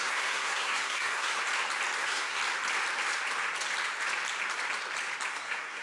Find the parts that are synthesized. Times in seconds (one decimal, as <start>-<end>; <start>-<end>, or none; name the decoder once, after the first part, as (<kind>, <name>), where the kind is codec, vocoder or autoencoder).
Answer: 0.0-1.4 (codec, SNAC); 2.0-2.4; 5.3-5.8